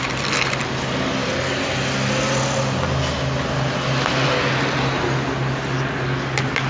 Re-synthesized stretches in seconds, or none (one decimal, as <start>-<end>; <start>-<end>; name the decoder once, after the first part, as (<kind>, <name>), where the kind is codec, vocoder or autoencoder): none